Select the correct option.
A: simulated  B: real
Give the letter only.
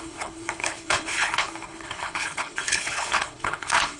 A